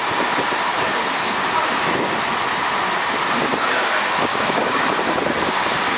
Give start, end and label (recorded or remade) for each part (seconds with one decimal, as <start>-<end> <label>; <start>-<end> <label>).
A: 0.0-4.3 recorded; 4.3-4.8 remade; 4.8-6.0 recorded

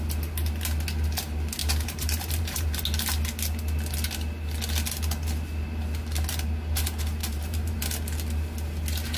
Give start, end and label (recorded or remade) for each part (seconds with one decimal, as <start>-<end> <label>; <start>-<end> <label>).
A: 0.0-1.6 recorded; 1.6-2.8 remade; 2.8-7.2 recorded; 7.2-7.8 remade; 7.8-9.2 recorded

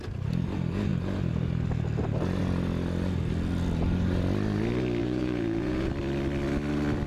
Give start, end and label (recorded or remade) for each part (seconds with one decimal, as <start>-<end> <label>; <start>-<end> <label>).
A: 0.0-5.0 recorded; 5.0-5.9 remade; 5.9-7.1 recorded

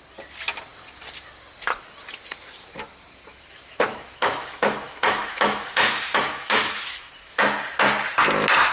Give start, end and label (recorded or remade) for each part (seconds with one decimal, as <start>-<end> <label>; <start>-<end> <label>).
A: 0.0-3.3 recorded; 3.3-7.1 remade; 7.1-8.7 recorded